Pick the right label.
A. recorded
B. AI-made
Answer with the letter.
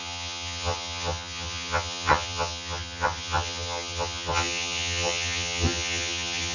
B